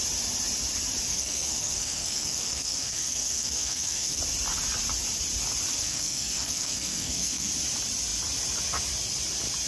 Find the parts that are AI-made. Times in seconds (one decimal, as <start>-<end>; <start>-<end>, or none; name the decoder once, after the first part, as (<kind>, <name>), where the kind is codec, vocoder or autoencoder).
1.1-4.2 (codec, SNAC); 5.7-7.5